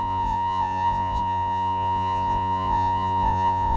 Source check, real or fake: fake